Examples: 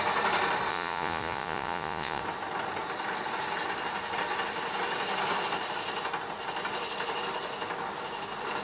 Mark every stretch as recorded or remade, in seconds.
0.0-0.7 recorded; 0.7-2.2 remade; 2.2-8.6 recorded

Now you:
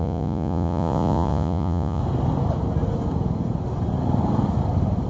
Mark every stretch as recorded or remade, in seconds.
0.0-2.0 remade; 2.0-5.1 recorded

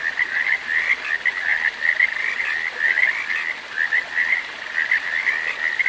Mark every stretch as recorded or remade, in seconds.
0.0-5.9 recorded

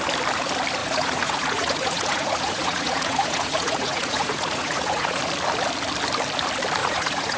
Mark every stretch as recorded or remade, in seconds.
0.0-0.8 recorded; 0.8-5.2 remade; 5.2-6.8 recorded; 6.8-7.4 remade